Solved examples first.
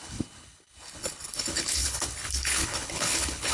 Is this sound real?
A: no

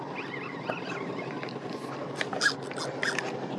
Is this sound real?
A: yes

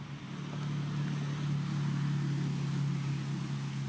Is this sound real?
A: yes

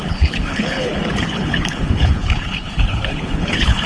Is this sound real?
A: no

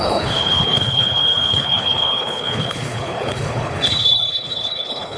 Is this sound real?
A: no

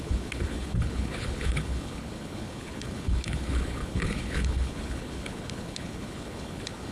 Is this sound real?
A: no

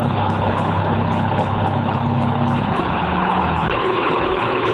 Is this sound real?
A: no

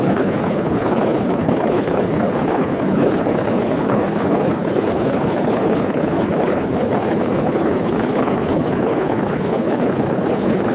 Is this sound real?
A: no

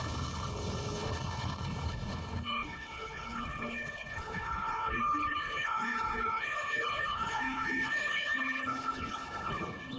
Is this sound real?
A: no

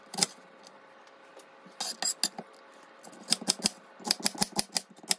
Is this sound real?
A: yes